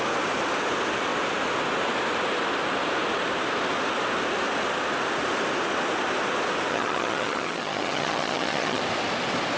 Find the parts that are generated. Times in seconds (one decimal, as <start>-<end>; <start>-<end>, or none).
6.7-8.8